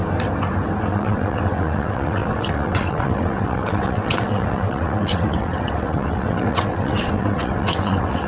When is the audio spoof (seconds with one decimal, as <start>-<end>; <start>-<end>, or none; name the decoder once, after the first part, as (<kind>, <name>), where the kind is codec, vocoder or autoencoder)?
0.8-8.3 (vocoder, WaveNeXt)